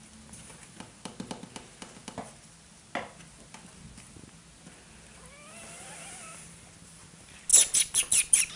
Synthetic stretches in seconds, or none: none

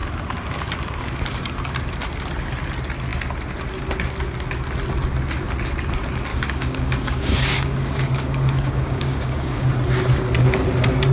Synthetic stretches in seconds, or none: 6.3-9.7 (codec, DAC)